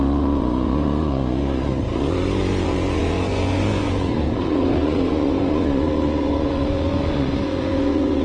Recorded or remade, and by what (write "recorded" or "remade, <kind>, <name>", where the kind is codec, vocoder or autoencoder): remade, vocoder, Vocos